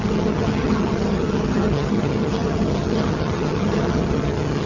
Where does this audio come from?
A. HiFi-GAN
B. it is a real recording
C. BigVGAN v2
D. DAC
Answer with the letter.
A